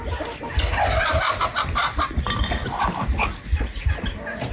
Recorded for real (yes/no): yes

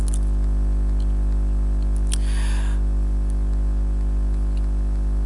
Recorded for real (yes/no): yes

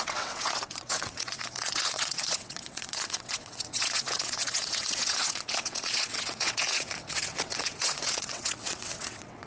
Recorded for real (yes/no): no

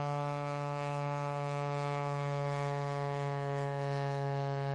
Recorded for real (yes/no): no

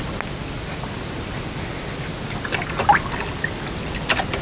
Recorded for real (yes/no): yes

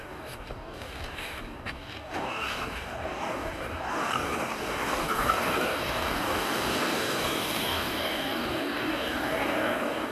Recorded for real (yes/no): no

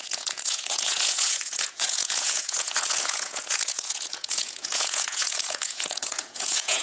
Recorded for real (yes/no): no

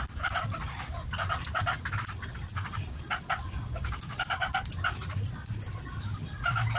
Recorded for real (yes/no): yes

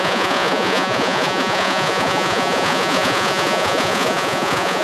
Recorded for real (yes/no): no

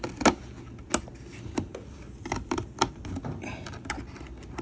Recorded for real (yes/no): yes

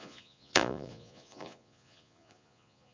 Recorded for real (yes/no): no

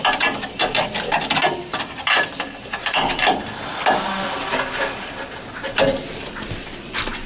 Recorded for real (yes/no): no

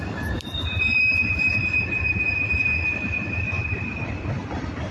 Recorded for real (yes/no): no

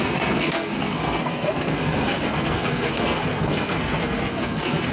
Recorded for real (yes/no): no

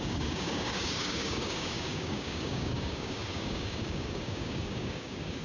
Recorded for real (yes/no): no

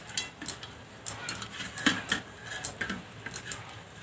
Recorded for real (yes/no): yes